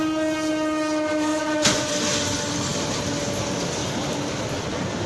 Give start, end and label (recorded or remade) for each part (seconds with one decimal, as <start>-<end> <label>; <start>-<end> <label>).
0.0-1.3 recorded; 1.3-1.9 remade; 1.9-5.1 recorded